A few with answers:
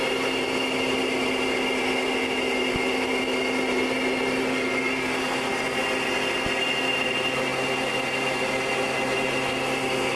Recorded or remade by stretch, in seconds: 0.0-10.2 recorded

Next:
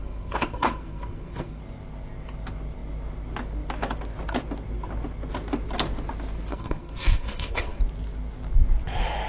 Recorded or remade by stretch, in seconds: 0.0-1.6 remade; 1.6-6.5 recorded; 6.5-7.8 remade; 7.8-9.3 recorded